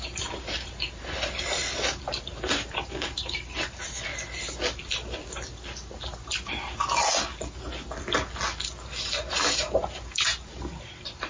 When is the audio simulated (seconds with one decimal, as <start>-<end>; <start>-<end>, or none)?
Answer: 0.0-4.1; 9.3-11.3